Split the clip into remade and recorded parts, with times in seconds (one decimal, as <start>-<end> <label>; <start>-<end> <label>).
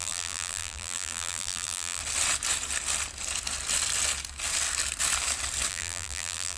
0.0-2.0 remade; 2.0-5.7 recorded; 5.7-6.6 remade